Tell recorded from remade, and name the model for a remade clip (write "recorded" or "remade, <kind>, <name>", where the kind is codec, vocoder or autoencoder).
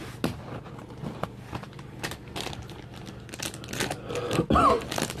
recorded